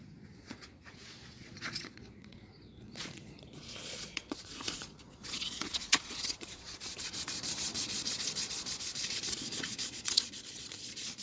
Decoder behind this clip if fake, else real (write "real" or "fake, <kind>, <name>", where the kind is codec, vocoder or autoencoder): fake, vocoder, Vocos